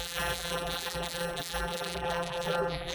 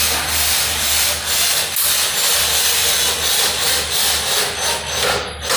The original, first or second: second